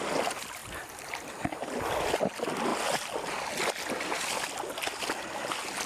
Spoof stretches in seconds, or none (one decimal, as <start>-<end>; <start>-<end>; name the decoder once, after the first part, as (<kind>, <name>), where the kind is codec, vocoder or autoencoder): none